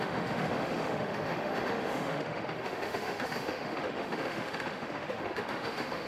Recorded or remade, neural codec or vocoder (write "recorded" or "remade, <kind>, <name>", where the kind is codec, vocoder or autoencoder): remade, autoencoder, DAC-VAE